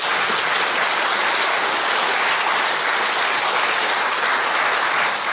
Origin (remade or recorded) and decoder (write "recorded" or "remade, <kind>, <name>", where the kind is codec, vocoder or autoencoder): recorded